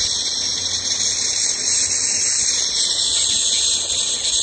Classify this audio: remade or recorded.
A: recorded